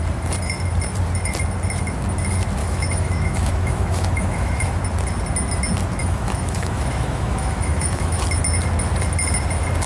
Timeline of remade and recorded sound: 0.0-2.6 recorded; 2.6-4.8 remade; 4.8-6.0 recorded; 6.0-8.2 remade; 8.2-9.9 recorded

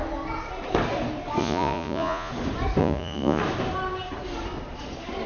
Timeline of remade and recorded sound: 0.0-1.4 recorded; 1.4-2.3 remade; 2.3-2.8 recorded; 2.8-3.4 remade; 3.4-5.3 recorded

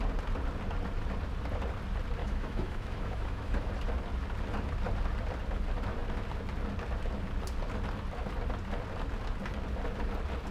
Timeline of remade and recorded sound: 0.0-2.2 recorded; 2.2-3.7 remade; 3.7-10.5 recorded

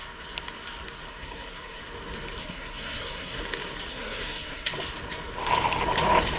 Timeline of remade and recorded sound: 0.0-1.1 recorded; 1.1-1.8 remade; 1.8-2.4 recorded; 2.4-3.4 remade; 3.4-3.9 recorded; 3.9-4.7 remade; 4.7-6.4 recorded

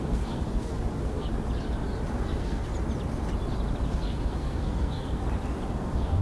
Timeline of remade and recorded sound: 0.0-1.3 remade; 1.3-2.1 recorded; 2.1-2.7 remade; 2.7-3.9 recorded; 3.9-5.2 remade; 5.2-5.7 recorded; 5.7-6.2 remade